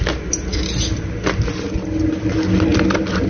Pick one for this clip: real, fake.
real